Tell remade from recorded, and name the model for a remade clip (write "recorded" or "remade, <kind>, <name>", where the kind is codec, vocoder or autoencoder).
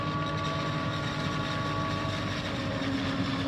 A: recorded